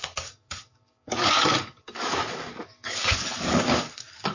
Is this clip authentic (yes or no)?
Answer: no